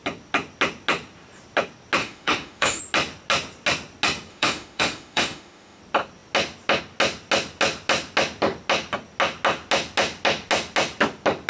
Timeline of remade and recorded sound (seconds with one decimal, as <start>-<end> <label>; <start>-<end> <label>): 0.0-2.0 recorded; 2.0-2.8 remade; 2.8-4.3 recorded; 4.3-5.8 remade; 5.8-11.5 recorded